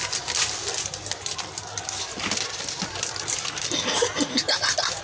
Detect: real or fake real